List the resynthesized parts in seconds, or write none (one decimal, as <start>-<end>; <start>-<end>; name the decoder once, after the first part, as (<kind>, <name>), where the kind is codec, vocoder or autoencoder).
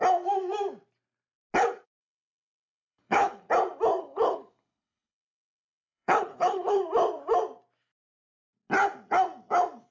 2.0-3.5 (codec, HILCodec); 4.0-6.8